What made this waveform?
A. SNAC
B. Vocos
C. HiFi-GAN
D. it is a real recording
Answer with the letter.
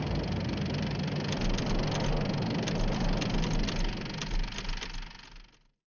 D